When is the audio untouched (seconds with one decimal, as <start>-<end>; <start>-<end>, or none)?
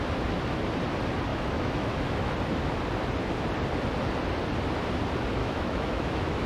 0.0-1.3; 2.3-5.4